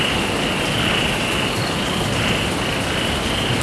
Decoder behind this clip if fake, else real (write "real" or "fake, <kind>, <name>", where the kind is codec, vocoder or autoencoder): real